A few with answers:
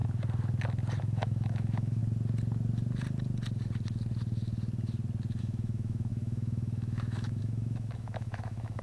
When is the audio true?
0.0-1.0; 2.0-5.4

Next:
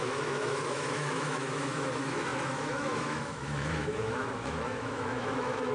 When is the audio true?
none

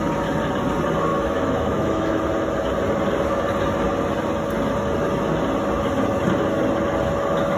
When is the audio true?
0.0-1.1; 2.2-7.6

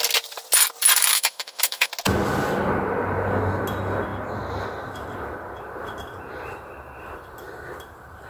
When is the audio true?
0.0-1.1; 1.9-8.3

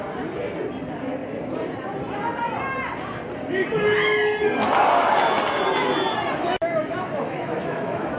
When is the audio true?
0.0-6.4

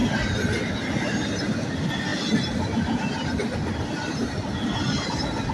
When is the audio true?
0.0-5.5

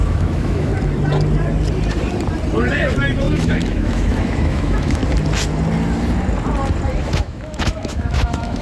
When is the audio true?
0.7-3.2; 5.0-7.0

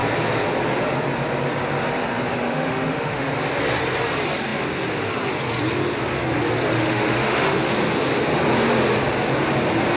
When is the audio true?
0.0-2.4; 3.3-6.7; 7.7-10.0